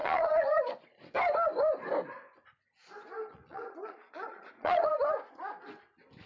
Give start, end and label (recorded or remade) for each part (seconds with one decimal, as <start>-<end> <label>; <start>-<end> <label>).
0.0-0.6 remade; 0.6-3.2 recorded; 3.2-4.9 remade; 4.9-6.3 recorded